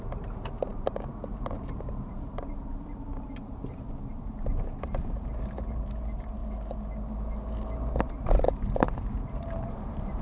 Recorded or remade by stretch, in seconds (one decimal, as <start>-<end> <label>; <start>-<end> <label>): 0.0-6.4 remade; 6.4-8.2 recorded; 8.2-10.2 remade